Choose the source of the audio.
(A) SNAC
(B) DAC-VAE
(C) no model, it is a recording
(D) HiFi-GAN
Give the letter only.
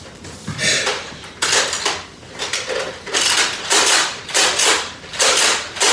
C